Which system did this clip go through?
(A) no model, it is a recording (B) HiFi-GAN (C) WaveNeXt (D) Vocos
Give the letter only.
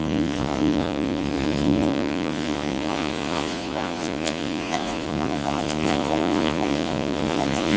D